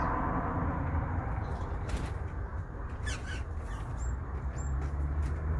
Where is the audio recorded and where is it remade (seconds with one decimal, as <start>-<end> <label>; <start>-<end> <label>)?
0.0-1.5 recorded; 1.5-2.1 remade; 2.1-2.5 recorded; 2.5-5.6 remade